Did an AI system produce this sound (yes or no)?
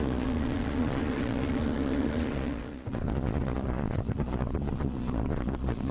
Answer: yes